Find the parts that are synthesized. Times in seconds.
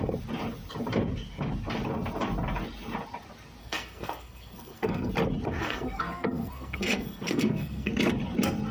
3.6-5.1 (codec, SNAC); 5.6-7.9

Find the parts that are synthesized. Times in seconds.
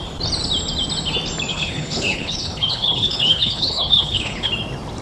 1.5-4.5 (codec, HILCodec)